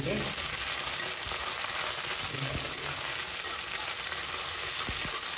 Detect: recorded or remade recorded